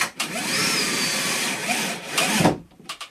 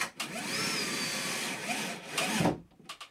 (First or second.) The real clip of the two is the second